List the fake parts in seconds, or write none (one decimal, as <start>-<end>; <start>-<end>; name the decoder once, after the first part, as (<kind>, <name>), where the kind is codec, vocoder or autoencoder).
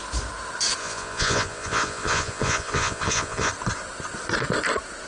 0.8-3.5 (vocoder, Vocos)